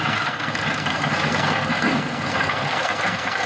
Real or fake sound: fake